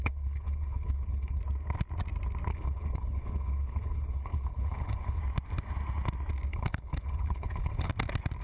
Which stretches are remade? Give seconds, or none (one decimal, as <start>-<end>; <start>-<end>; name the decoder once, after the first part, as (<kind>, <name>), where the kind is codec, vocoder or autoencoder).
0.0-1.4 (codec, HILCodec); 2.5-5.2; 6.5-7.9